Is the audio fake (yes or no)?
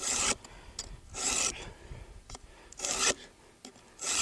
no